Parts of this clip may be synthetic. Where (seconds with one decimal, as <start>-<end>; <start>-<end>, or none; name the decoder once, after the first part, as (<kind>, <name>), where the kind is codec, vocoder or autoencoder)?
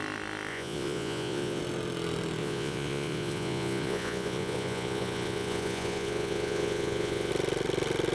0.5-1.6 (vocoder, Vocos); 2.4-7.3